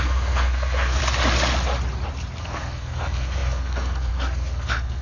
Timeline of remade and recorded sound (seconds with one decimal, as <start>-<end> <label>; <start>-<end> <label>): 0.0-1.0 remade; 1.0-2.4 recorded; 2.4-5.0 remade